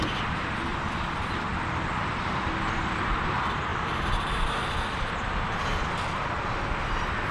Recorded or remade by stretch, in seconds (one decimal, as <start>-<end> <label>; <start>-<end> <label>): 0.0-0.7 recorded; 0.7-2.6 remade; 2.6-3.7 recorded; 3.7-4.5 remade; 4.5-7.3 recorded